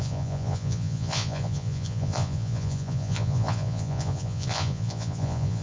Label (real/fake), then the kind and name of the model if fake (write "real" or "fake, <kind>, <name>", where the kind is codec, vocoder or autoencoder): fake, vocoder, Vocos